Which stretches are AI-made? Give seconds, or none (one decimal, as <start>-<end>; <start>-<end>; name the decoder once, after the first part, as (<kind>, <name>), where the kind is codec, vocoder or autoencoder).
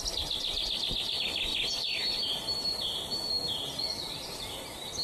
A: none